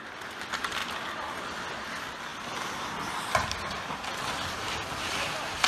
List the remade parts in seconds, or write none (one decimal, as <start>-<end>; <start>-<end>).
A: 2.3-3.2